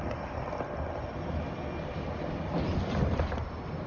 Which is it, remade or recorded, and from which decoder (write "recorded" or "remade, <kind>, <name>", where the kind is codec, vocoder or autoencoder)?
recorded